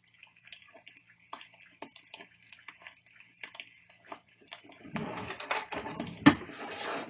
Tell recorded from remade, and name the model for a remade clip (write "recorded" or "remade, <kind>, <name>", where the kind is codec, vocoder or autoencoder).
recorded